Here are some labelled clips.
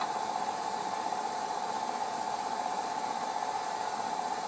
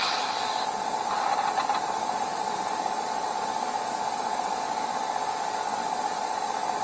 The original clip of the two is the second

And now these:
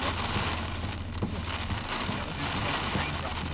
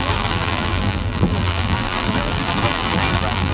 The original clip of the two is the first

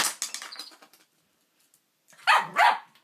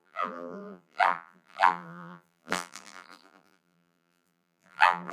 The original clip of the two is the first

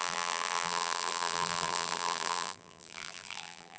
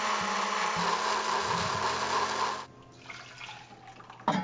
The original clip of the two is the second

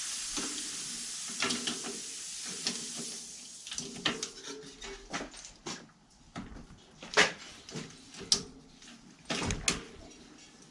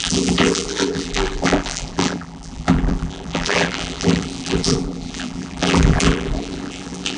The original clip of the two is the first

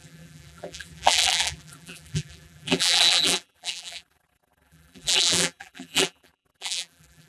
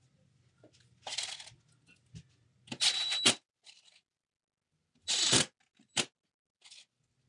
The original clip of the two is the second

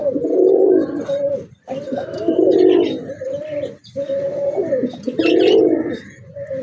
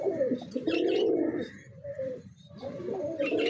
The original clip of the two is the first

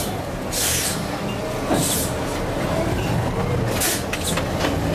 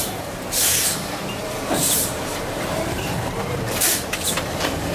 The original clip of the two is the first